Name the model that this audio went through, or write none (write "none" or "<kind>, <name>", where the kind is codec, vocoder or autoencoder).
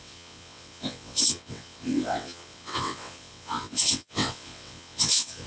vocoder, WaveNeXt